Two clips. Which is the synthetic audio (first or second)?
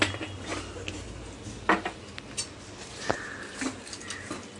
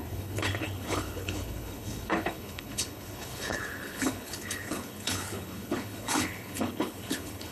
second